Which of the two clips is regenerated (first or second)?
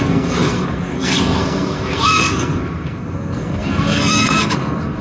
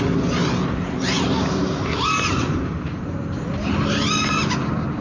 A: first